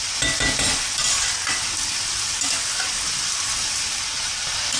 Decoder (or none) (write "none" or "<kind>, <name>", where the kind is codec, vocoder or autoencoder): none